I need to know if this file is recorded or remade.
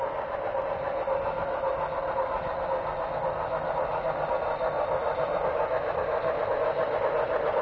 recorded